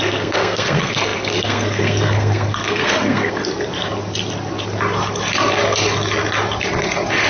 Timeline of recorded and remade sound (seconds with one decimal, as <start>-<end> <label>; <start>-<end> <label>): 0.0-3.4 remade; 3.4-7.3 recorded